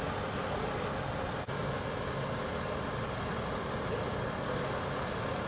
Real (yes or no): yes